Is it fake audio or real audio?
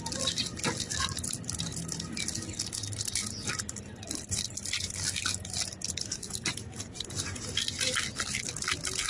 real